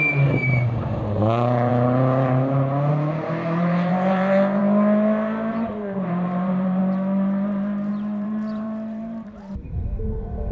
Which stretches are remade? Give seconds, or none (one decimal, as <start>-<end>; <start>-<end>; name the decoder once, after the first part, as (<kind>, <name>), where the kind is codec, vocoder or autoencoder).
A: 0.0-1.7 (vocoder, BigVGAN v2); 2.9-4.6; 5.5-6.8; 7.9-10.5